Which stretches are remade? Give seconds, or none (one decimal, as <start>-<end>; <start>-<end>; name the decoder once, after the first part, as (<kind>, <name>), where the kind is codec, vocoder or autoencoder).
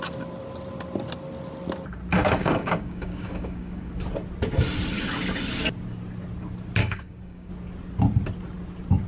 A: 2.1-3.9 (codec, DAC); 6.8-7.5